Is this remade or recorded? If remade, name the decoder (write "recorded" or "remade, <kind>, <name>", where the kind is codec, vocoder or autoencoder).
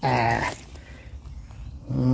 recorded